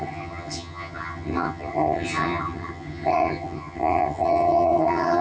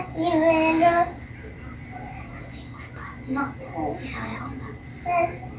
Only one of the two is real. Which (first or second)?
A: second